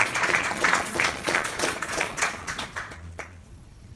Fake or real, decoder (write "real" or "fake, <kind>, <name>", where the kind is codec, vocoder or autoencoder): fake, vocoder, Vocos